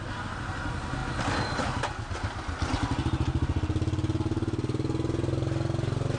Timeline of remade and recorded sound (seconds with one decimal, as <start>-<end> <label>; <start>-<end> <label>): 0.0-6.2 recorded